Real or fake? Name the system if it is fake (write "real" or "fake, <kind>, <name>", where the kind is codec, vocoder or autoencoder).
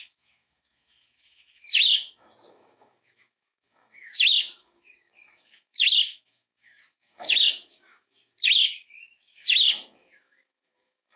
fake, autoencoder, DAC-VAE